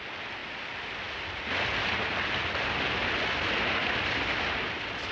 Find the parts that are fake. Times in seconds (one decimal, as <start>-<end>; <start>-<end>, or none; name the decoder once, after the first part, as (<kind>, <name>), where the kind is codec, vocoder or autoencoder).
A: none

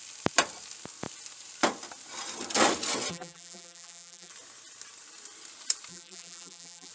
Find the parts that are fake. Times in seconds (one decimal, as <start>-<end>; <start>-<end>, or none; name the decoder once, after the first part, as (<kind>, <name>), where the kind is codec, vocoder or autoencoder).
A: 3.1-4.3 (vocoder, BigVGAN v2); 5.9-6.9

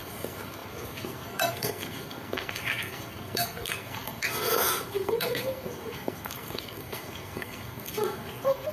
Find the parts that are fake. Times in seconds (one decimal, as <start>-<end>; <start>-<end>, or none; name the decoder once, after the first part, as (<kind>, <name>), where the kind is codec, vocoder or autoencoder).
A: 0.0-8.7 (codec, SNAC)

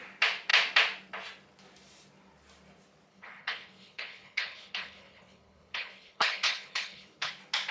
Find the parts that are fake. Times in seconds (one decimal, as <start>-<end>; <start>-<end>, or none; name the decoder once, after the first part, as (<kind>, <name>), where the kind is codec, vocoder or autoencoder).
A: 3.1-7.3 (codec, HILCodec)